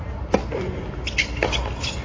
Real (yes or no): yes